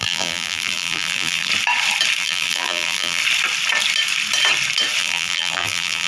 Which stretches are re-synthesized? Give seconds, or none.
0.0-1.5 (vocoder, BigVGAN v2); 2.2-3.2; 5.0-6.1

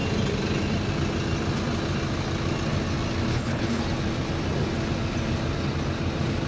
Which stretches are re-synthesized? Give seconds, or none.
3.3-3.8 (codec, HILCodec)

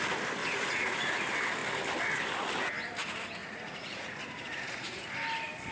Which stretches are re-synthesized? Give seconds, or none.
0.4-1.2 (vocoder, Vocos); 3.4-5.1